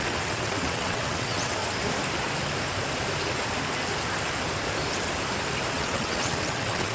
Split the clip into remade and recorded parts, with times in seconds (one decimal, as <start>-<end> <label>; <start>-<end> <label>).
0.0-1.6 remade; 1.6-5.7 recorded; 5.7-6.9 remade